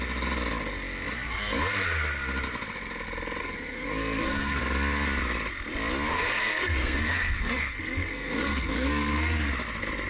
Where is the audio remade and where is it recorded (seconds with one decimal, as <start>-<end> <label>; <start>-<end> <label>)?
0.0-3.4 recorded; 3.4-4.6 remade; 4.6-6.1 recorded; 6.1-9.5 remade; 9.5-10.1 recorded